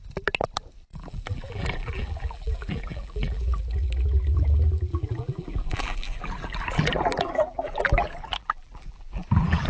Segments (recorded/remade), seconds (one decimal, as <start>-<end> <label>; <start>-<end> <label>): 0.0-0.9 recorded; 0.9-3.6 remade; 3.6-4.9 recorded; 4.9-9.7 remade